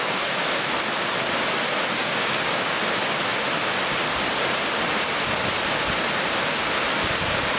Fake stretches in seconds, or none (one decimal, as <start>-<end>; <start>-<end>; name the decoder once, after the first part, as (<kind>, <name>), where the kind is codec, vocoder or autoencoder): 2.0-2.8 (codec, DAC)